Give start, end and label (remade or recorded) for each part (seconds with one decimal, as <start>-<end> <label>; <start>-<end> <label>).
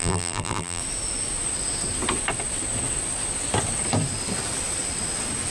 0.0-0.8 remade; 0.8-5.5 recorded